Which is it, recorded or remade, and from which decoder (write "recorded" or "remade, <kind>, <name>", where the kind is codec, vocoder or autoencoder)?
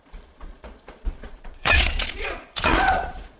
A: remade, vocoder, Vocos